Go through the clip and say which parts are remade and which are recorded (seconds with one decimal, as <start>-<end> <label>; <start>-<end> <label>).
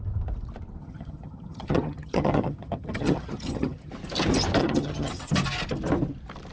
0.0-0.8 recorded; 0.8-3.9 remade; 3.9-4.6 recorded; 4.6-5.3 remade; 5.3-6.5 recorded